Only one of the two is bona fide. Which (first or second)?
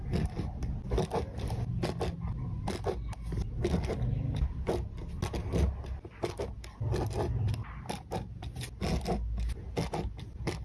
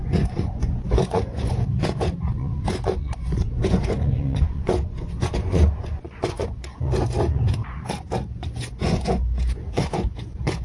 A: first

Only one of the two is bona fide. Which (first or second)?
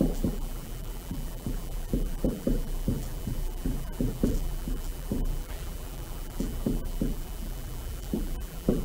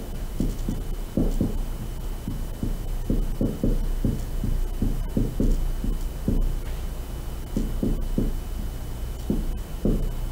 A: second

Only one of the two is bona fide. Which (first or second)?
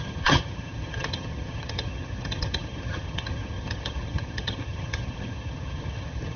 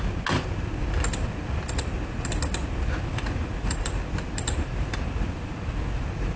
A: second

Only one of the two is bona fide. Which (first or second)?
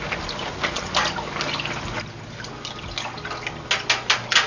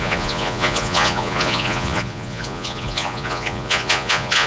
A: first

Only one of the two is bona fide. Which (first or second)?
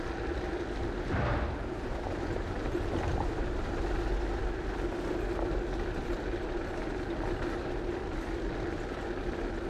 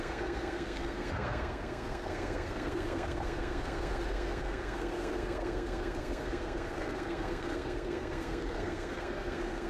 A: first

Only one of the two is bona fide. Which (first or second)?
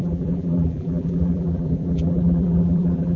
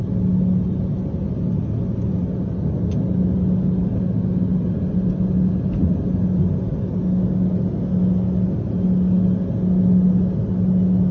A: second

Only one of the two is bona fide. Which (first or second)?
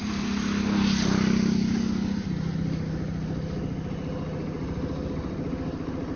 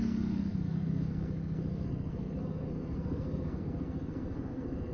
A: first